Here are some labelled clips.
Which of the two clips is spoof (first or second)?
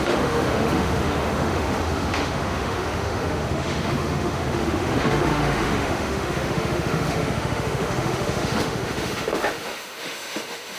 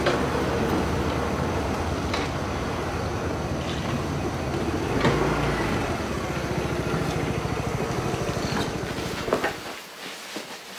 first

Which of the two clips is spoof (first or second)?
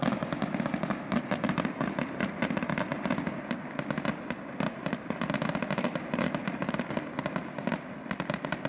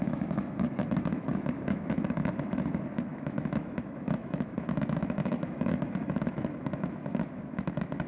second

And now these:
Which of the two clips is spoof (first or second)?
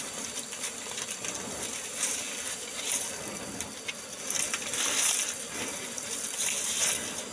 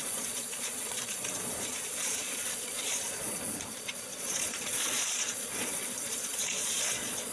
second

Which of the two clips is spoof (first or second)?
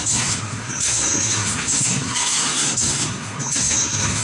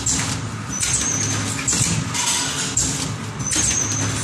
first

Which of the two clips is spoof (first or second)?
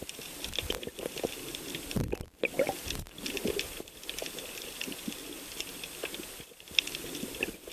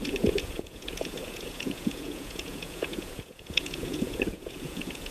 second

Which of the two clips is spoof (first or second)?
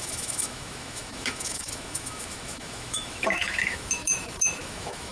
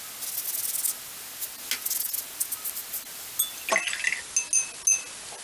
first